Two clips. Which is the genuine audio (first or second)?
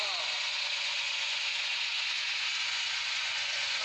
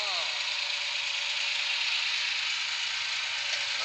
second